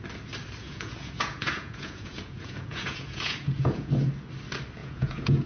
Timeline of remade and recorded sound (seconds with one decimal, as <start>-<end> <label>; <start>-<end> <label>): 0.0-0.6 recorded; 0.6-3.9 remade; 3.9-4.8 recorded; 4.8-5.5 remade